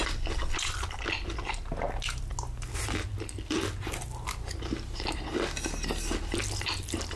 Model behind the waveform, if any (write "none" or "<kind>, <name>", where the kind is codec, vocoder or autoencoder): none